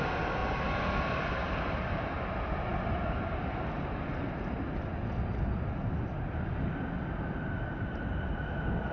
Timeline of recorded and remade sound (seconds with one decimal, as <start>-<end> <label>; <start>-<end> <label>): 0.0-8.9 recorded